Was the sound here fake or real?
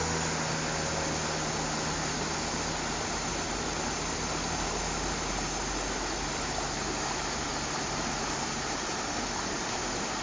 real